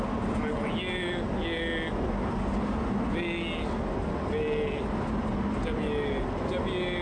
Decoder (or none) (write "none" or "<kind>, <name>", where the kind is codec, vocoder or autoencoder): none